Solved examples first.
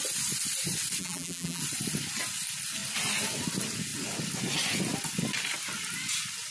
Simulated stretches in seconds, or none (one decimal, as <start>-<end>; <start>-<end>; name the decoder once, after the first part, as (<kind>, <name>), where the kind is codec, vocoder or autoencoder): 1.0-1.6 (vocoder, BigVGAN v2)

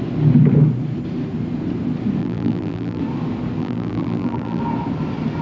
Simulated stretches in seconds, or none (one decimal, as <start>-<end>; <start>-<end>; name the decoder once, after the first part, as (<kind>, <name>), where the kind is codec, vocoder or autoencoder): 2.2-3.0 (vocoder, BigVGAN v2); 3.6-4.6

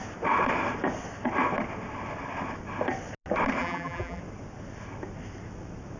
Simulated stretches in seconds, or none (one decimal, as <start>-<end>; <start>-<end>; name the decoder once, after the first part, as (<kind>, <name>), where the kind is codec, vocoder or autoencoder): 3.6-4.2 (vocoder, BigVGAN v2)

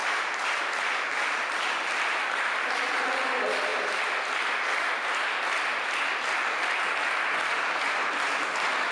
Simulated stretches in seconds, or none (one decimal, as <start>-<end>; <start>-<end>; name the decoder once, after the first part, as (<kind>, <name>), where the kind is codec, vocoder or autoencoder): none